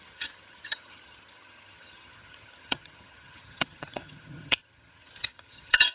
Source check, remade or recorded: remade